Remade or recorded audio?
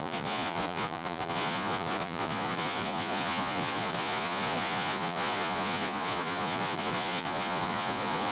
remade